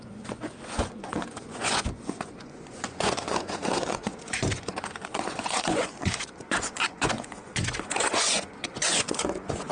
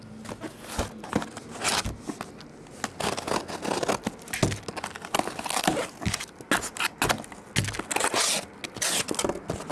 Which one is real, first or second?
second